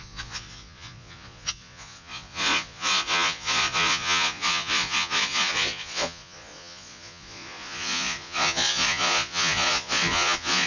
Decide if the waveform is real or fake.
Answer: fake